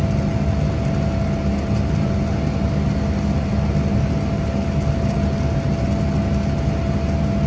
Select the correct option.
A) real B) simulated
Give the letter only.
A